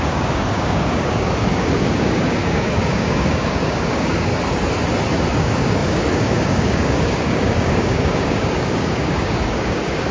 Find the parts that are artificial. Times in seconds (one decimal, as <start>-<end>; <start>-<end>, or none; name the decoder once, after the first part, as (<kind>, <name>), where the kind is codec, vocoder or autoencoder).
0.0-4.3 (codec, DAC); 5.3-10.1